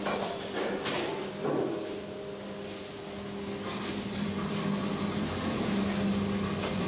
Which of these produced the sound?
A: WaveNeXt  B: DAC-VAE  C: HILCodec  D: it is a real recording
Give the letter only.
D